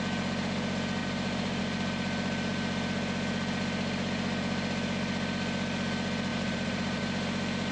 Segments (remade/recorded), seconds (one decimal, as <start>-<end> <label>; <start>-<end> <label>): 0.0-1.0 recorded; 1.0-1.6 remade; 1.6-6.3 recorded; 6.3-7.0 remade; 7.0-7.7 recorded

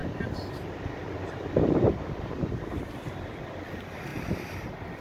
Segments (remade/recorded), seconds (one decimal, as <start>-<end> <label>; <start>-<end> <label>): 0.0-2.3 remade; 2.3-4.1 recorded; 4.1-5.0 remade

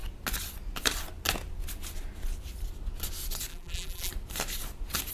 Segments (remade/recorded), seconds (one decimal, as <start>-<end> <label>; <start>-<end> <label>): 0.0-3.5 recorded; 3.5-4.1 remade; 4.1-5.1 recorded

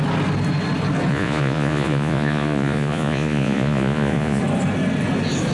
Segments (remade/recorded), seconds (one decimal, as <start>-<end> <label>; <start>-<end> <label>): 0.0-1.1 recorded; 1.1-4.4 remade; 4.4-5.5 recorded

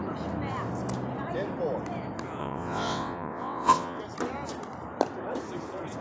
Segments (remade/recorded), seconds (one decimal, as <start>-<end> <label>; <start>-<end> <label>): 0.0-2.4 recorded; 2.4-4.0 remade; 4.0-6.0 recorded

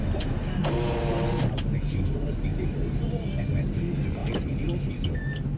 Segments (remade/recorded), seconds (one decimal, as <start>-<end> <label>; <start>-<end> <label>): 0.0-5.6 recorded

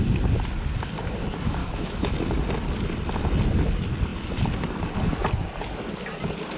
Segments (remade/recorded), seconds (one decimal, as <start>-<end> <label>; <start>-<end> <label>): 0.0-1.6 recorded; 1.6-2.1 remade; 2.1-6.6 recorded

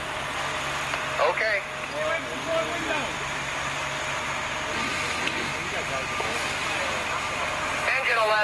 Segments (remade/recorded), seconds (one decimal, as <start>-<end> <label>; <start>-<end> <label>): 0.0-8.4 recorded